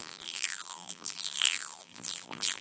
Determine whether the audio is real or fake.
fake